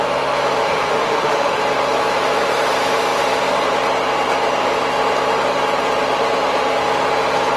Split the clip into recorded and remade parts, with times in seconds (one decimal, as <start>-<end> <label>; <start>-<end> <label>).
0.0-0.6 recorded; 0.6-1.6 remade; 1.6-7.6 recorded